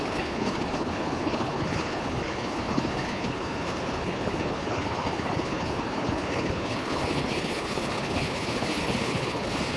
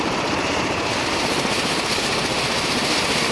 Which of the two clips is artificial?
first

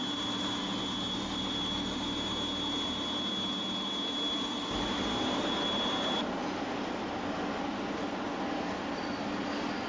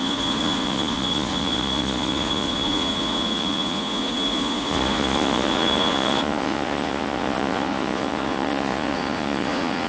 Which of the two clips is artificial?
second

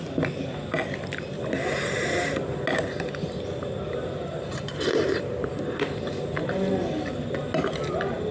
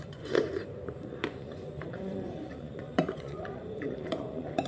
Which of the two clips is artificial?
second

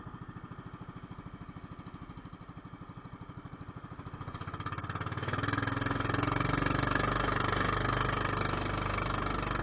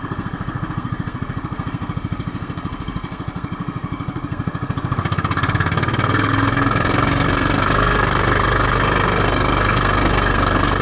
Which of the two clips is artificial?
second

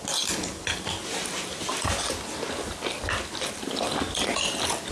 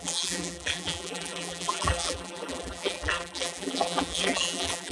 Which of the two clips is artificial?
second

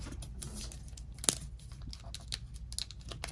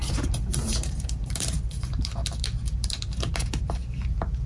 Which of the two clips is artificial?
second